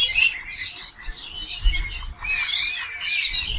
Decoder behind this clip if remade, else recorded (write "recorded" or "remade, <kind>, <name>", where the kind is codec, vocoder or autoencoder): recorded